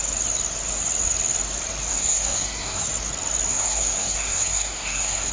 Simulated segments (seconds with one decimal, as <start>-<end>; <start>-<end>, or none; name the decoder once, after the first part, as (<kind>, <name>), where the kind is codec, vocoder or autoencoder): 1.9-2.8 (codec, SNAC); 3.5-5.3